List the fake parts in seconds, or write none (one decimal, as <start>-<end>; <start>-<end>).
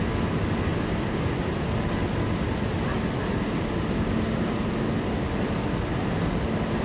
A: none